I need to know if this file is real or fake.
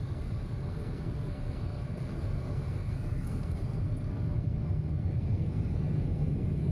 fake